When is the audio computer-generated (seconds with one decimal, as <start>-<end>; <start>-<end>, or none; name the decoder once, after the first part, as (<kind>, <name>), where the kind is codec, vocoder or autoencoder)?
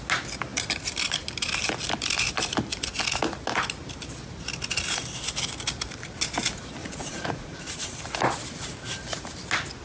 6.8-8.0 (vocoder, Vocos)